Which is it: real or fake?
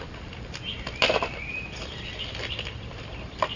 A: real